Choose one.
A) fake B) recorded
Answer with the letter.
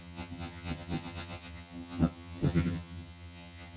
A